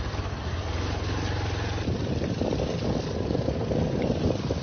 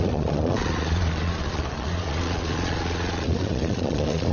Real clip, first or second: first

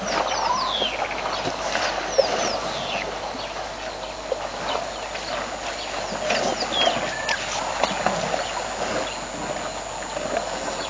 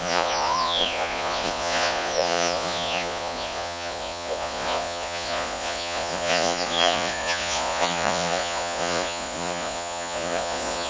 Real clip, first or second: first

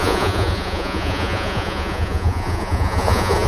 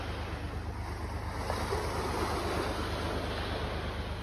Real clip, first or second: second